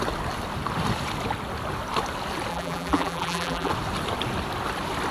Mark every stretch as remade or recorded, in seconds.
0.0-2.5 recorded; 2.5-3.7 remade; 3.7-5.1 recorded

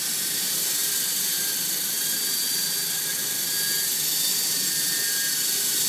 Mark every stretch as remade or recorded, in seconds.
0.0-5.9 recorded